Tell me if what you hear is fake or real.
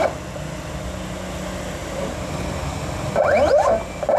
real